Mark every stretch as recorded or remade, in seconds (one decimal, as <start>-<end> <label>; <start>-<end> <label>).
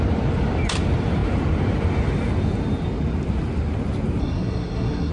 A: 0.0-4.2 recorded; 4.2-5.1 remade